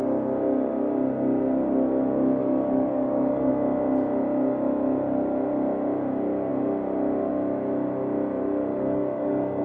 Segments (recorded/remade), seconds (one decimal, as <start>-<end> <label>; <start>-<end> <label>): 0.0-2.4 recorded; 2.4-3.5 remade; 3.5-8.7 recorded; 8.7-9.6 remade